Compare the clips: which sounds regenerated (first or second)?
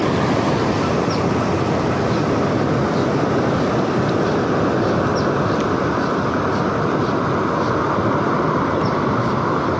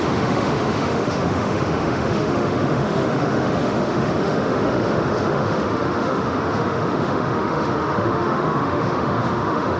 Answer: second